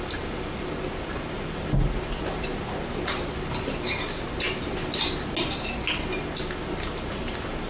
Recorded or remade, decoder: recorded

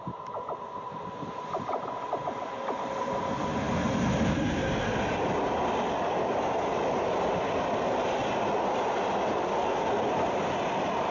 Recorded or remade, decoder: recorded